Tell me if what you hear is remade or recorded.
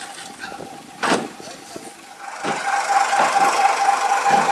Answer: recorded